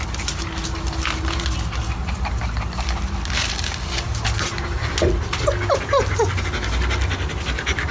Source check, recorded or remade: recorded